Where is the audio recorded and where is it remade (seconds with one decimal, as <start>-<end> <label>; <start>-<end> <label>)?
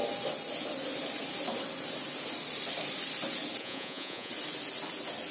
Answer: 0.0-3.6 recorded; 3.6-4.3 remade; 4.3-5.3 recorded